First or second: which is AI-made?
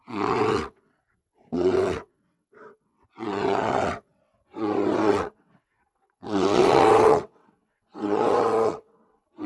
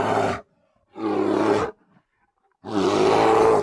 first